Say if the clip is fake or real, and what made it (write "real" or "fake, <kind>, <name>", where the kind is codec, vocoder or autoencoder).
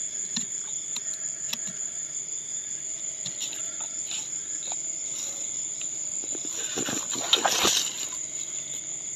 real